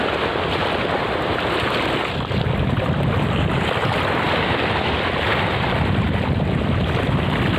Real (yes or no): yes